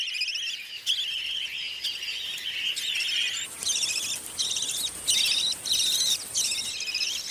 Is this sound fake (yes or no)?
no